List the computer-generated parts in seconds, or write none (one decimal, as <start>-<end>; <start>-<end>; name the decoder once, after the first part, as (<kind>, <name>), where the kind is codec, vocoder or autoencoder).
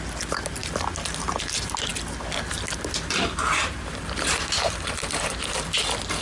1.9-5.3 (vocoder, BigVGAN v2)